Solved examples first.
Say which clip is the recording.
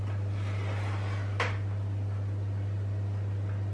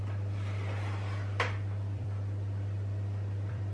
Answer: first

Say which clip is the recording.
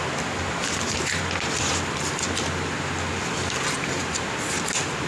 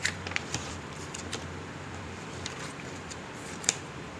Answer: first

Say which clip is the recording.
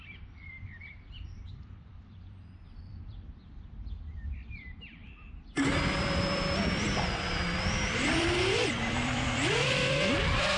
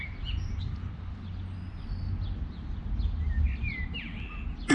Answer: second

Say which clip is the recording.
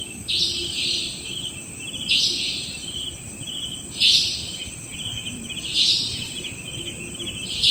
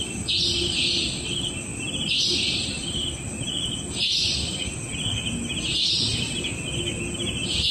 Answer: second